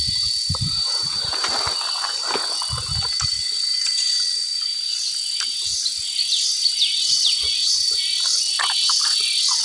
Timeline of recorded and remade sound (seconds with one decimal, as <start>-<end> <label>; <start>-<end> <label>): 0.0-9.6 recorded